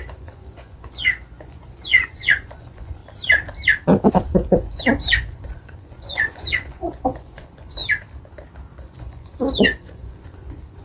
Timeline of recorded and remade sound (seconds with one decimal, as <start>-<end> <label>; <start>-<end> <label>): 0.0-3.0 remade; 3.0-4.1 recorded; 4.1-7.8 remade; 7.8-8.8 recorded; 8.8-10.8 remade